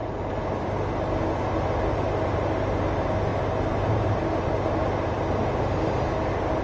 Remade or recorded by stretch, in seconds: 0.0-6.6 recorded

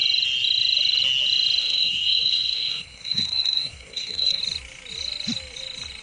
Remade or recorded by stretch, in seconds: 0.0-1.6 recorded; 1.6-4.4 remade; 4.4-6.0 recorded

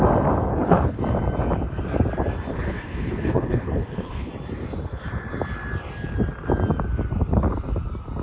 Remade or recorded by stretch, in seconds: 0.0-0.5 recorded; 0.5-1.0 remade; 1.0-2.5 recorded; 2.5-4.3 remade; 4.3-8.2 recorded

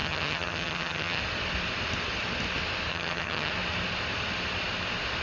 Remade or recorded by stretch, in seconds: 0.0-1.2 remade; 1.2-2.9 recorded; 2.9-3.5 remade; 3.5-5.2 recorded

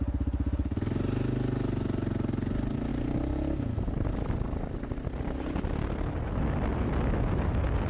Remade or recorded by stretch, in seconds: 0.0-7.9 recorded

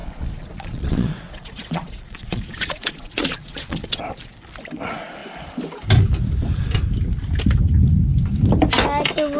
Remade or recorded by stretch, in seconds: 0.0-4.0 remade; 4.0-9.4 recorded

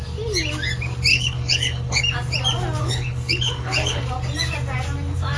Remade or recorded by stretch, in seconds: 0.0-1.1 recorded; 1.1-2.0 remade; 2.0-2.8 recorded; 2.8-4.0 remade; 4.0-5.4 recorded